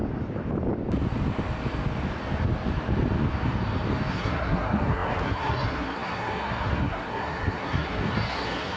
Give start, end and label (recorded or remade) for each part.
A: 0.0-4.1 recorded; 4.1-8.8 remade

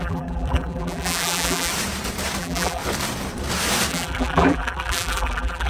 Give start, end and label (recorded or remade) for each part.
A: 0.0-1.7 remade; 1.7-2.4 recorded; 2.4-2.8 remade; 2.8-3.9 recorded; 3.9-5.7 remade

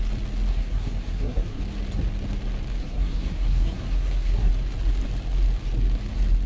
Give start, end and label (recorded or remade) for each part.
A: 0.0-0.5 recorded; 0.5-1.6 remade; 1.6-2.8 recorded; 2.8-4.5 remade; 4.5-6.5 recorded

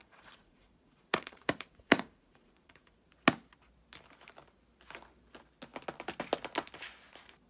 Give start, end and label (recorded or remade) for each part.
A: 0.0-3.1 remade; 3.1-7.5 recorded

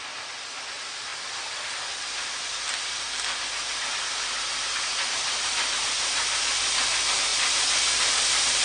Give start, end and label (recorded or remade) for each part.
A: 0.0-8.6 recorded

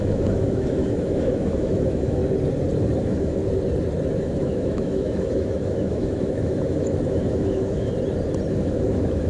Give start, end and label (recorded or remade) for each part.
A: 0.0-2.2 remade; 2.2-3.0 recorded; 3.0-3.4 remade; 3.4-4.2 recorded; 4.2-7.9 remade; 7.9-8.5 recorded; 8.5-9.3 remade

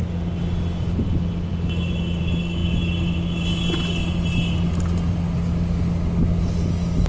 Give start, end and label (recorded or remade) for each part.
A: 0.0-7.1 recorded